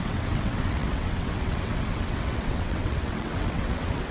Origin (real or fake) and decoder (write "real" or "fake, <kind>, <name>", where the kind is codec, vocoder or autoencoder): fake, vocoder, WaveNeXt